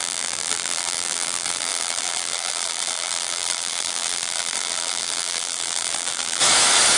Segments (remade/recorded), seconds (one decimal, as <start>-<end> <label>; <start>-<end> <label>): 0.0-6.4 remade; 6.4-7.0 recorded